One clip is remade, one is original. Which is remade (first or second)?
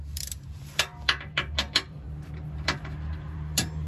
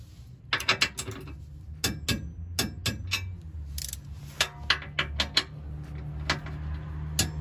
first